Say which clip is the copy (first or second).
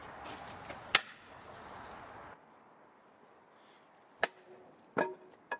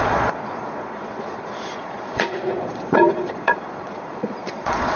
second